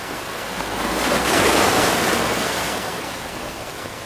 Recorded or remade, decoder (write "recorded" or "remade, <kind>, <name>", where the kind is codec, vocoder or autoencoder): remade, codec, SNAC